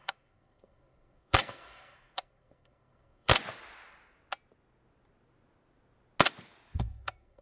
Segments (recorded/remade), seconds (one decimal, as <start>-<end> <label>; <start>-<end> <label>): 0.0-3.3 remade; 3.3-6.8 recorded; 6.8-7.4 remade